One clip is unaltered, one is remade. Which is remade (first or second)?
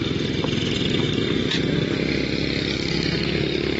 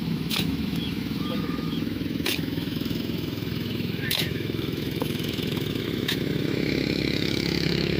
second